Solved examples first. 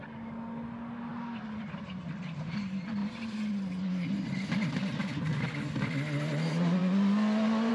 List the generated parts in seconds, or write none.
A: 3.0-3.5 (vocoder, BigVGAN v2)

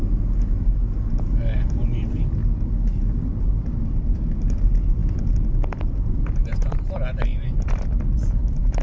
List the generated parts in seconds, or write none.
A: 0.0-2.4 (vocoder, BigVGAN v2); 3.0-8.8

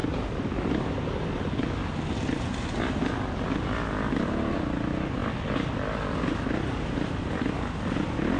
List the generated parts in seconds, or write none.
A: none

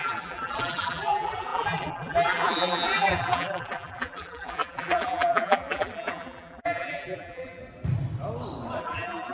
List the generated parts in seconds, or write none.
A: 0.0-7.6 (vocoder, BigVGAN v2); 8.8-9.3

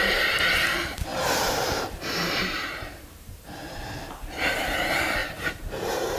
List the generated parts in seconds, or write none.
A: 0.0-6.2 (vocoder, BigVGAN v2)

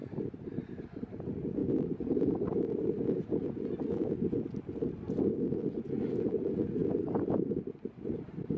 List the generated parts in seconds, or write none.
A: 0.0-1.2 (vocoder, BigVGAN v2); 1.6-3.2

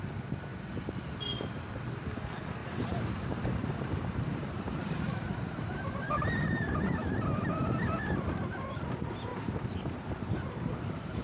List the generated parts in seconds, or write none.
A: 0.5-1.1 (vocoder, BigVGAN v2); 2.6-6.4; 9.3-11.2

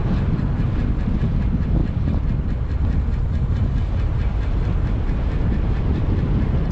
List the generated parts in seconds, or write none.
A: 0.0-0.7 (vocoder, BigVGAN v2)